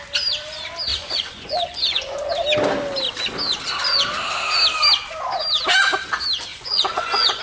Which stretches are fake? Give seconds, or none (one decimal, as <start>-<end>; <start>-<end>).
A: 0.9-2.3; 6.5-7.4